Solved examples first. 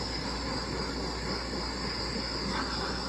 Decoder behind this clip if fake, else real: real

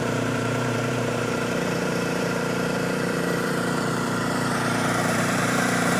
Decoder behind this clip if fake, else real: fake, vocoder, BigVGAN v2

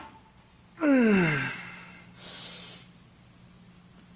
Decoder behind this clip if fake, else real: real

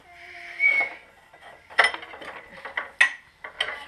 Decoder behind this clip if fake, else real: real